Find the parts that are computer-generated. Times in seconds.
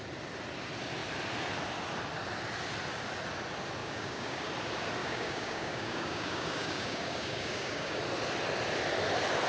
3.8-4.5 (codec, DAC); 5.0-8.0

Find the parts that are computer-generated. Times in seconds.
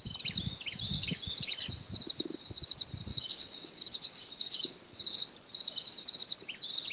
0.9-1.5 (codec, DAC); 3.1-5.2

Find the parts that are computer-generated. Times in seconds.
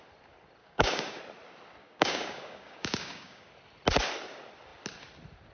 0.6-1.2 (codec, DAC); 1.8-3.5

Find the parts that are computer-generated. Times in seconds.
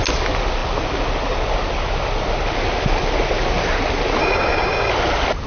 4.2-4.9 (codec, DAC)